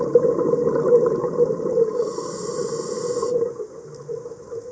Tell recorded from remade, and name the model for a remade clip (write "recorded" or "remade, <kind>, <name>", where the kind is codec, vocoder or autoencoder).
recorded